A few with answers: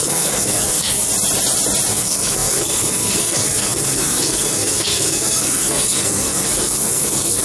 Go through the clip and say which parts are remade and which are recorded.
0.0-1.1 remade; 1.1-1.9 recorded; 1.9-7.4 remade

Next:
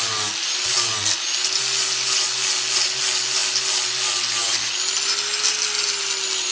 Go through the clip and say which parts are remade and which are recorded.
0.0-6.5 recorded

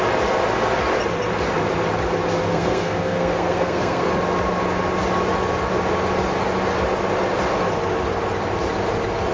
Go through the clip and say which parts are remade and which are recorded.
0.0-2.5 recorded; 2.5-4.1 remade; 4.1-9.3 recorded